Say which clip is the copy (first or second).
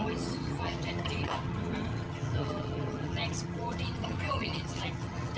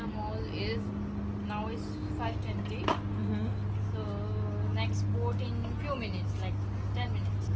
first